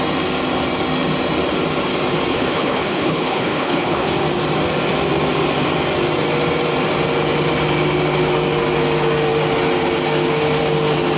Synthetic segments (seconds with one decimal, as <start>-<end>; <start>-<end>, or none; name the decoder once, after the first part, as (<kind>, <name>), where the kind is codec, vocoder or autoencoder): 2.3-4.1 (codec, HILCodec)